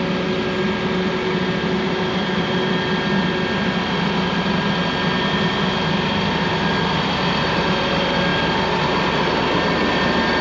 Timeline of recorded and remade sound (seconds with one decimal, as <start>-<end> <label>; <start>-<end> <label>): 0.0-10.4 recorded